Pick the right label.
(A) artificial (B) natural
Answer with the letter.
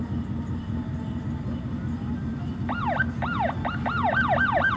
A